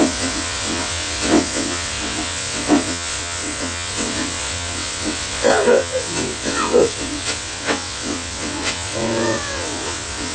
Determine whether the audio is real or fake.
fake